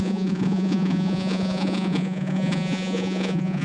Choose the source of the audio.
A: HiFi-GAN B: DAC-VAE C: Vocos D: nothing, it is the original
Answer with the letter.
C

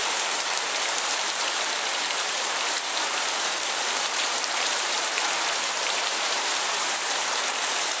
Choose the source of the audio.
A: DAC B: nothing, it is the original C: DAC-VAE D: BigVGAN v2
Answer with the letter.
D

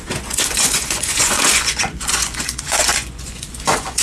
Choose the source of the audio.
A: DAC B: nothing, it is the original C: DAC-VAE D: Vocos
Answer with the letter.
D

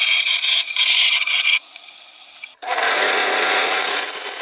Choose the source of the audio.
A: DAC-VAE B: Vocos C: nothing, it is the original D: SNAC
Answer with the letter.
B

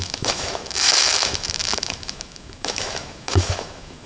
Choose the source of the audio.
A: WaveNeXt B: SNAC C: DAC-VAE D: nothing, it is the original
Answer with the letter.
C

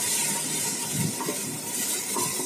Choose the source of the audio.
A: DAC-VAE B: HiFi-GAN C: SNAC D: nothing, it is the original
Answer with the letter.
D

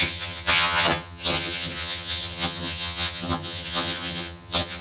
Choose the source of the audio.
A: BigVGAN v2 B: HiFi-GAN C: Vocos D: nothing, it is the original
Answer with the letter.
B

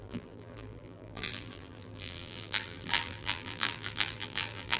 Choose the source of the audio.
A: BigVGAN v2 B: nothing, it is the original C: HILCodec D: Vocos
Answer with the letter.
A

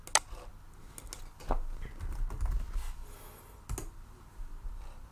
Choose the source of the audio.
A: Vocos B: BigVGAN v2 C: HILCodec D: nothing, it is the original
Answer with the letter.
D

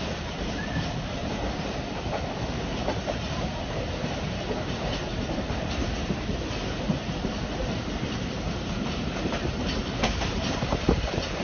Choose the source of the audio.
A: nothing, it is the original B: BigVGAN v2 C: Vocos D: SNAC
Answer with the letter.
B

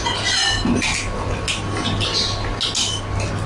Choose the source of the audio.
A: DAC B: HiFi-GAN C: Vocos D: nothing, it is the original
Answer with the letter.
D